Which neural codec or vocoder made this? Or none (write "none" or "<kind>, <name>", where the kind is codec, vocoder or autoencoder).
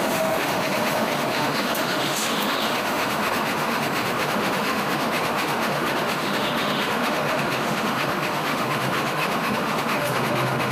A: autoencoder, DAC-VAE